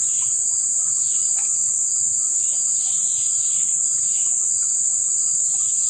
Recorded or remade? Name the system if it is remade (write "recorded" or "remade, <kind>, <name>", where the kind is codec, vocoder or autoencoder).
recorded